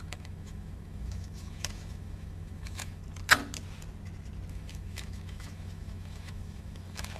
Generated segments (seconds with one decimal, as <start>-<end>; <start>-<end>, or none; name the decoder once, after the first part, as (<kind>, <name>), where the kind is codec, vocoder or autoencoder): 0.0-3.0 (autoencoder, DAC-VAE); 4.5-7.2